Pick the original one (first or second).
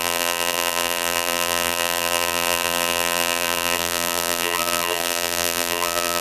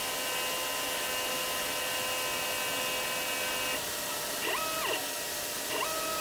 second